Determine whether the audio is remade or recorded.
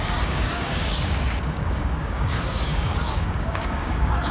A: remade